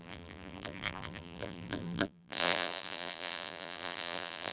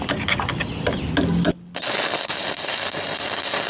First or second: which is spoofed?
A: first